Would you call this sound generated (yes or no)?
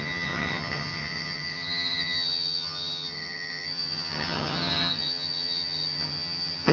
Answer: yes